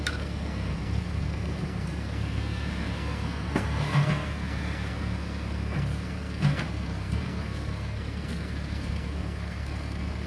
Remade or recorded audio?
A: remade